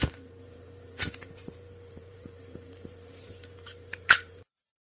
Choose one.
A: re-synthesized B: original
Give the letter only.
A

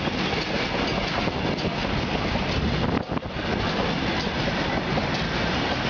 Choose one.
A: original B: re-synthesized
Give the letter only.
A